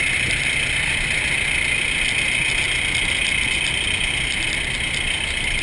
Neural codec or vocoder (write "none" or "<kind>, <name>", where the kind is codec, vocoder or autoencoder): none